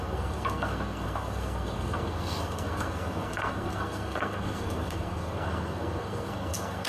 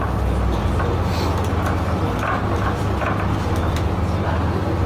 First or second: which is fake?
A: first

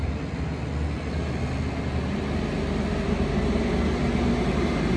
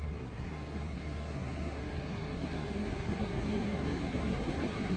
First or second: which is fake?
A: second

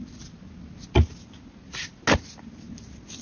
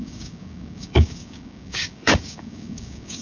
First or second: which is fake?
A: second